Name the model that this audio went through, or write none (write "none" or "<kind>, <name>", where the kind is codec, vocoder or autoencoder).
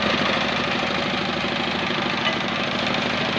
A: none